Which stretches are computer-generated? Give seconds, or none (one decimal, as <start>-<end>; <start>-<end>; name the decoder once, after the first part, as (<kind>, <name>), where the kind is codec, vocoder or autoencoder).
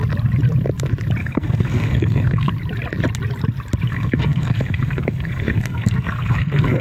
1.2-2.5 (codec, SNAC); 3.9-6.8